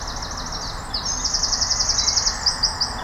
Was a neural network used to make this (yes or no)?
no